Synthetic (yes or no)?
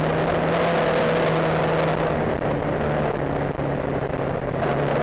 no